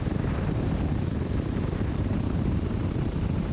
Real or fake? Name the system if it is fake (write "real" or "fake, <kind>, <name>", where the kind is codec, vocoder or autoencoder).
fake, vocoder, BigVGAN v2